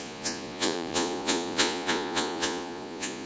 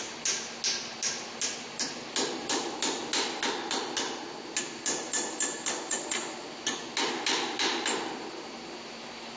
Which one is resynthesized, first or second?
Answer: first